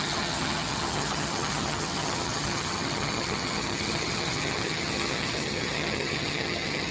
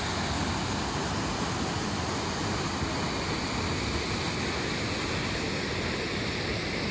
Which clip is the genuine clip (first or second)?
second